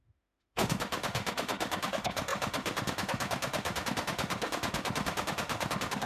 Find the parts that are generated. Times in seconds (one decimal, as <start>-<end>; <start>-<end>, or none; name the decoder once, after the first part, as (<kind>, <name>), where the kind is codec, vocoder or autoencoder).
0.0-6.1 (autoencoder, DAC-VAE)